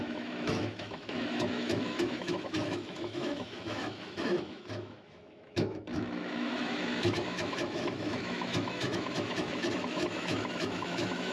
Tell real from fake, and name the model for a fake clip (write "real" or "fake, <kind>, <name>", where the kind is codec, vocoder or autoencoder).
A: fake, autoencoder, DAC-VAE